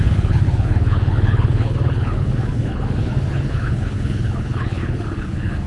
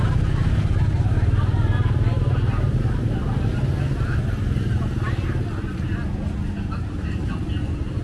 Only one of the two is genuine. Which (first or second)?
second